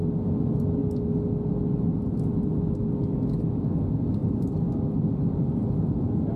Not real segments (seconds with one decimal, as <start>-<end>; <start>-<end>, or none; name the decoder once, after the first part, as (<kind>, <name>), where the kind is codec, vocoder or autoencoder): none